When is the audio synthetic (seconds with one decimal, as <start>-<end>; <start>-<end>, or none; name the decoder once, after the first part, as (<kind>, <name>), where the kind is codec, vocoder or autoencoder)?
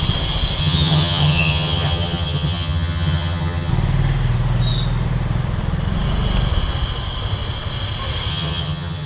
0.6-3.7 (vocoder, HiFi-GAN); 8.3-9.1